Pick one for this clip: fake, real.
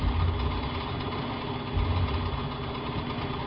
real